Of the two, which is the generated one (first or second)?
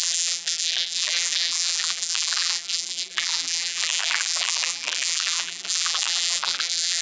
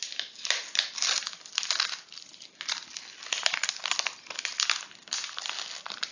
first